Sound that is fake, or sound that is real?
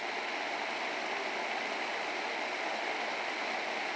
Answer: real